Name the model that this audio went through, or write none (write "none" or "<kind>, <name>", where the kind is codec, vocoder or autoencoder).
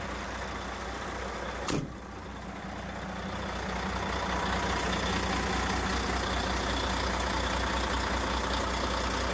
none